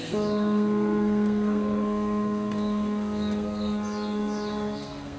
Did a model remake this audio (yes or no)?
yes